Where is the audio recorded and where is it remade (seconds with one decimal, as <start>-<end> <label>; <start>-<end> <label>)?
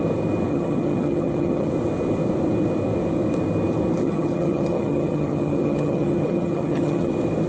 0.0-0.5 recorded; 0.5-1.7 remade; 1.7-4.0 recorded; 4.0-7.1 remade; 7.1-7.5 recorded